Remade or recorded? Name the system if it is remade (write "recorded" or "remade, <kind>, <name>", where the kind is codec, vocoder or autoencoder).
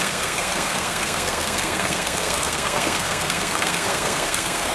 remade, codec, SNAC